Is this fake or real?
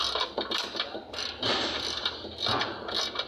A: real